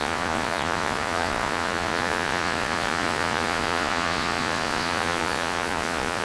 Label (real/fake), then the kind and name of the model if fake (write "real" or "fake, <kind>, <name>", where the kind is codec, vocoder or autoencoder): fake, vocoder, Vocos